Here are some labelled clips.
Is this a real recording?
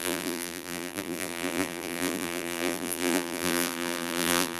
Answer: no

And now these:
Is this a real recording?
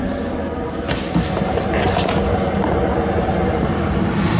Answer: no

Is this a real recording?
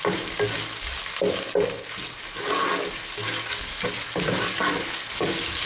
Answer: yes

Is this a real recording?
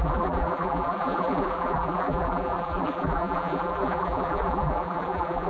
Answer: no